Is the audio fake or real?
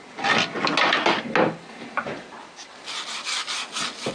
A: real